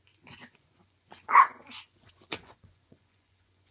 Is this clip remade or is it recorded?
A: remade